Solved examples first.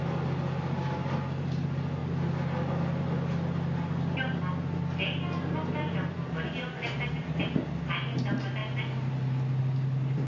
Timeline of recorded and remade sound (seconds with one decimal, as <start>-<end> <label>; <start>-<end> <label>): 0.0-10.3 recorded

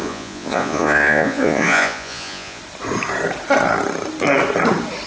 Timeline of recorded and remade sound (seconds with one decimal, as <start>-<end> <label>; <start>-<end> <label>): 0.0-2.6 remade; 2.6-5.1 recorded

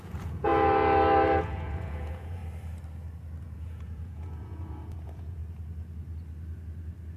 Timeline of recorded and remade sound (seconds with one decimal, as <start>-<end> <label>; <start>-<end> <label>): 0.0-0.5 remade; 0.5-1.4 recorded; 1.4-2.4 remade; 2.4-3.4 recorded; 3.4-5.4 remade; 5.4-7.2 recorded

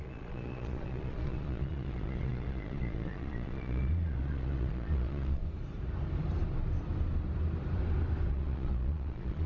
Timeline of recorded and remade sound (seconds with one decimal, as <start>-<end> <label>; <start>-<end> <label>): 0.0-5.4 remade; 5.4-8.3 recorded; 8.3-9.5 remade